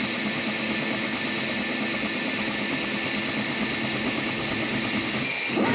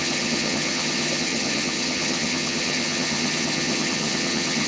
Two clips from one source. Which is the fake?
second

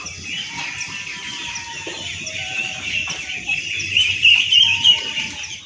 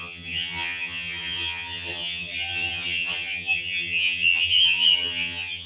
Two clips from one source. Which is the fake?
second